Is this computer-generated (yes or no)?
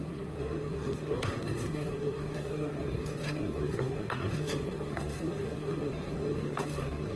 yes